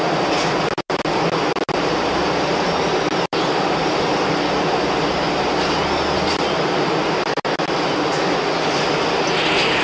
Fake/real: real